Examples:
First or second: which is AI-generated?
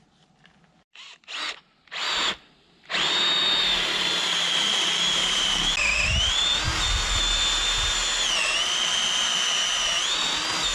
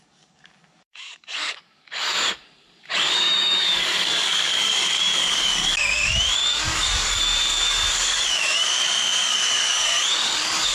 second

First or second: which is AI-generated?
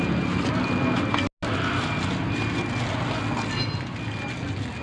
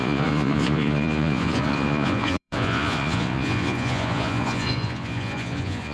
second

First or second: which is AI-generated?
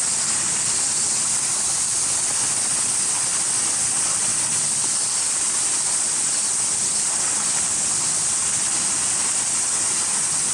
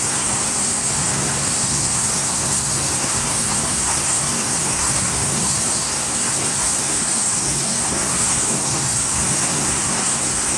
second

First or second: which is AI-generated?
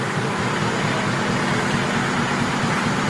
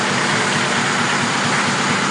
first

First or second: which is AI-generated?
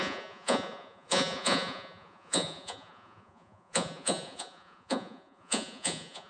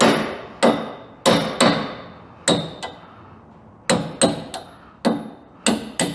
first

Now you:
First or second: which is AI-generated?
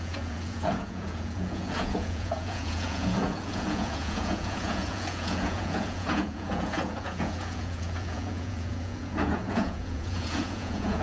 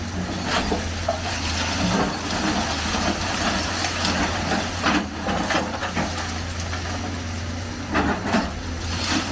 first